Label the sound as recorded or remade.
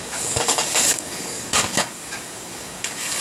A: remade